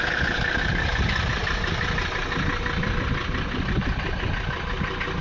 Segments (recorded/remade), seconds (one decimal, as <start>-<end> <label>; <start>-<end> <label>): 0.0-5.2 remade